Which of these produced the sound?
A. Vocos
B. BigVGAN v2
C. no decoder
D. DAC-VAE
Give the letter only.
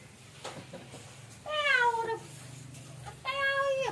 C